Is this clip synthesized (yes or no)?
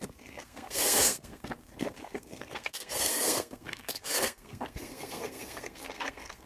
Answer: yes